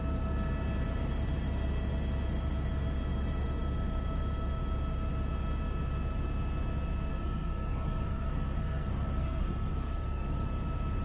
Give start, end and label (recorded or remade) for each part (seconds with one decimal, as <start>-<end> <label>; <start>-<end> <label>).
0.0-7.1 recorded; 7.1-10.5 remade; 10.5-11.0 recorded